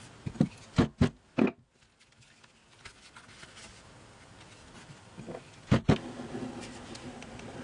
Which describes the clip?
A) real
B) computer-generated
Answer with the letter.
A